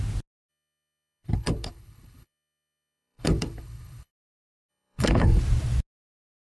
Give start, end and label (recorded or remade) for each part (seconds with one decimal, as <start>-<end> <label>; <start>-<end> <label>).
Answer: 0.0-0.5 recorded; 0.5-4.1 remade; 4.1-4.7 recorded; 4.7-5.4 remade; 5.4-6.5 recorded

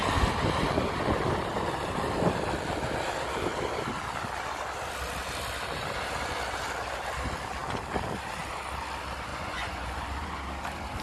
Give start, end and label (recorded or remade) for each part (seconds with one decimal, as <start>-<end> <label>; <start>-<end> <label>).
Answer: 0.0-9.3 recorded; 9.3-10.4 remade; 10.4-11.0 recorded

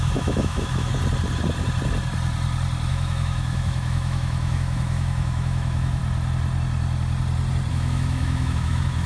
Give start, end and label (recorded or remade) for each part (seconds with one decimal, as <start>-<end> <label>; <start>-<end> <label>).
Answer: 0.0-0.9 remade; 0.9-2.9 recorded; 2.9-6.0 remade; 6.0-7.7 recorded; 7.7-9.1 remade

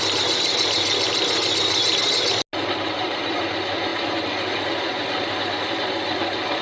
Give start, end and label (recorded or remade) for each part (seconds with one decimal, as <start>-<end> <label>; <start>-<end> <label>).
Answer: 0.0-6.6 recorded

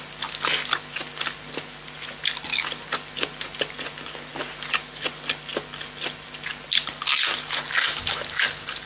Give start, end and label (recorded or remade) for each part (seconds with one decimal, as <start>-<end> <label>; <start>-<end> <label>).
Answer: 0.0-8.9 recorded

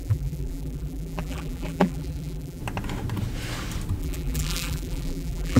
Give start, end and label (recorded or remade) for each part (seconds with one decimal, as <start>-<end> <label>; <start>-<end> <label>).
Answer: 0.0-2.6 remade; 2.6-4.0 recorded; 4.0-5.6 remade

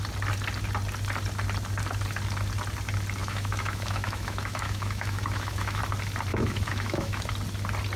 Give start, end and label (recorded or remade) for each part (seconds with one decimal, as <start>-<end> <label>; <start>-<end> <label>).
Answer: 0.0-3.2 recorded; 3.2-5.8 remade; 5.8-6.3 recorded; 6.3-7.3 remade; 7.3-8.0 recorded